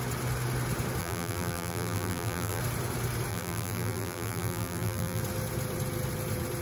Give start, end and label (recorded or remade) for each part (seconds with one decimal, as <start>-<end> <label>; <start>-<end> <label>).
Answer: 0.0-1.0 recorded; 1.0-2.6 remade; 2.6-3.3 recorded; 3.3-5.2 remade; 5.2-6.6 recorded